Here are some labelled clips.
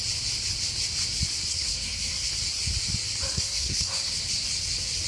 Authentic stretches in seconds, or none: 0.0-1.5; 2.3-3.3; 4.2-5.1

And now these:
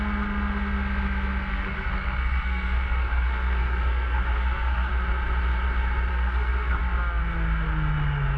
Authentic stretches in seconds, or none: 0.0-1.5; 4.9-6.1; 6.8-8.4